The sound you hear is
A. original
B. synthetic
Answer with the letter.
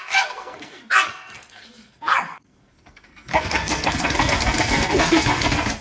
B